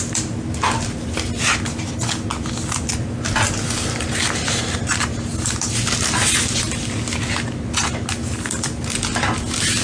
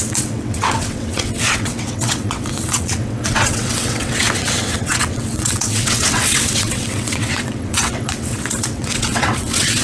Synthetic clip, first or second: second